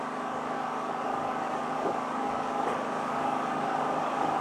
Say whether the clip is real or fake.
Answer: fake